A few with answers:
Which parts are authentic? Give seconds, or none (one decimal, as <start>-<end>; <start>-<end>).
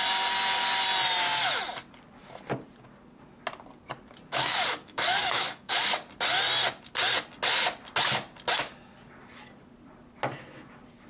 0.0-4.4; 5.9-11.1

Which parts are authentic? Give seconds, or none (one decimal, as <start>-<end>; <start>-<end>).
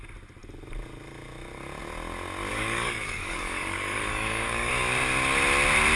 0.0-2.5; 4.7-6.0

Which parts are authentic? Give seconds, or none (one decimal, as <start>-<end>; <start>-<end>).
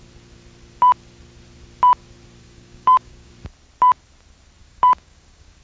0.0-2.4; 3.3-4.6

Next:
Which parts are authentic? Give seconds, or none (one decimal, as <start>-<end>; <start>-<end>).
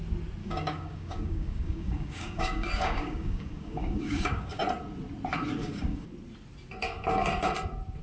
0.0-0.4; 4.6-5.6; 6.1-8.0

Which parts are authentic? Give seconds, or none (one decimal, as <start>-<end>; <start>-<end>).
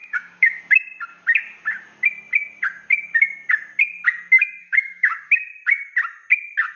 0.6-4.6; 5.4-6.8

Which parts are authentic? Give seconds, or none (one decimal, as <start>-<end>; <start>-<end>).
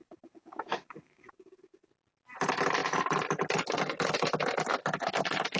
1.9-5.6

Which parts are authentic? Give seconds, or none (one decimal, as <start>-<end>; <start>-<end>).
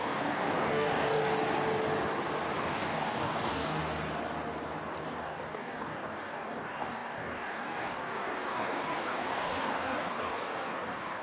1.2-2.6; 3.8-5.2